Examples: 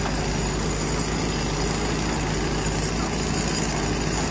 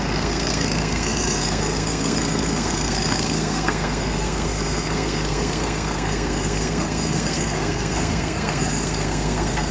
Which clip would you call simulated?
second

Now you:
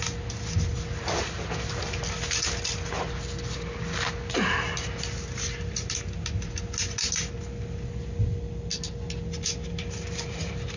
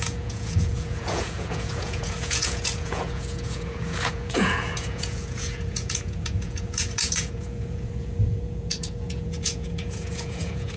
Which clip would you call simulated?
second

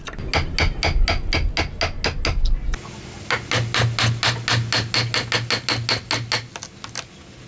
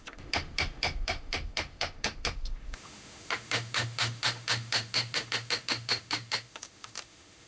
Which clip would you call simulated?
second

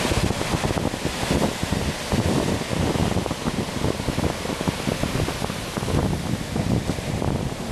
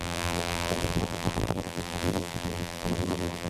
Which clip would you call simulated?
second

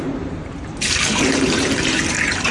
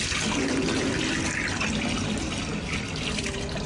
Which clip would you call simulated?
first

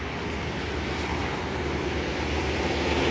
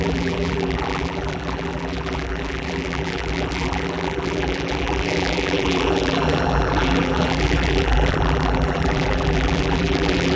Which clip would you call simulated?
second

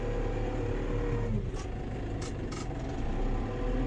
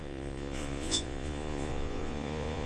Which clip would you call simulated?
second